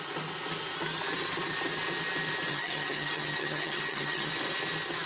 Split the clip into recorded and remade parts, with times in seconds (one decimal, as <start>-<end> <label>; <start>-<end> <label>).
0.0-2.5 recorded; 2.5-4.3 remade; 4.3-5.1 recorded